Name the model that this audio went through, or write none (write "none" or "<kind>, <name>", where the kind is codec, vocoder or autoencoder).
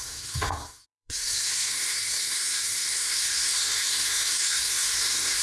codec, SNAC